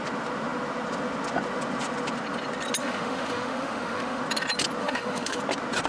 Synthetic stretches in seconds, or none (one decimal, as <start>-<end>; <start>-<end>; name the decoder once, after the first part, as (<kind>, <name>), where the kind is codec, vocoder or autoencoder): 2.8-4.2 (autoencoder, DAC-VAE); 4.8-5.4